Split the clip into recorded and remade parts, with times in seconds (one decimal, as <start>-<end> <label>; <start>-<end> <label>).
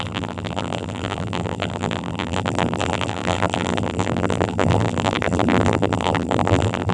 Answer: 0.0-6.9 remade